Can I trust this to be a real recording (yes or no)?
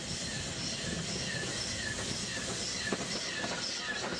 yes